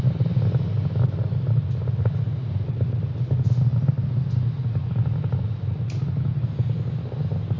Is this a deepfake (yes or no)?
no